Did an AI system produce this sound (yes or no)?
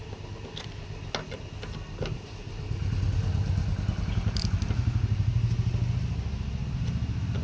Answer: no